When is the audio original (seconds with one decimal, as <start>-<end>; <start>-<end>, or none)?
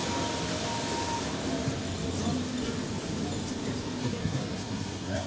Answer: 0.0-4.0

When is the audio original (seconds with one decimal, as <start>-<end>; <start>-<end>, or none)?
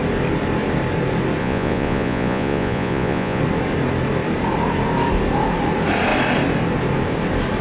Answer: 0.0-1.4; 3.4-7.6